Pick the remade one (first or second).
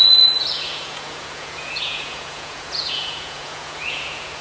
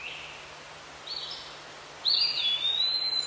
first